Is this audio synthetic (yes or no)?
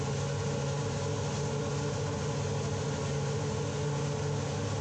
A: no